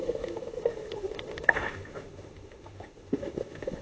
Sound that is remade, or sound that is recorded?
remade